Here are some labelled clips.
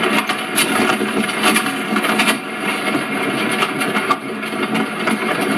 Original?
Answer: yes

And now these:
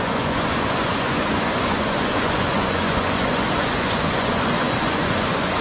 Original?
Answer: no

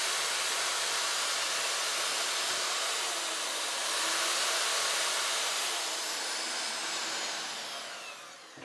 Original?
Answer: yes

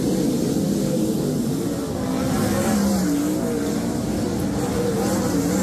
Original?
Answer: yes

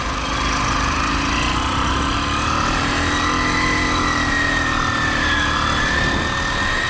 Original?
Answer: yes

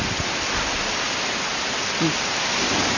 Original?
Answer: yes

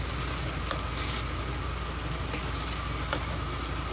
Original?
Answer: yes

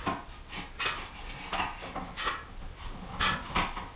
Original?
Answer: yes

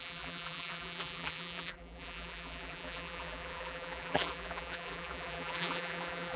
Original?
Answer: no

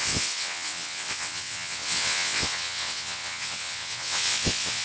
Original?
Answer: no